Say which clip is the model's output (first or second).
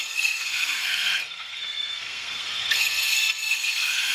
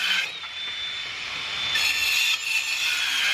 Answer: first